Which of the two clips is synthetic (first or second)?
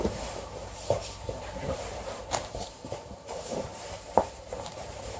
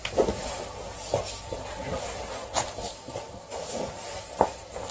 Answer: first